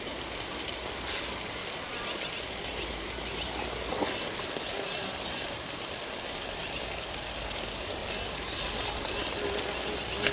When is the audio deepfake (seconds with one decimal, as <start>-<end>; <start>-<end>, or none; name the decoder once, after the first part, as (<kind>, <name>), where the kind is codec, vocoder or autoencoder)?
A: none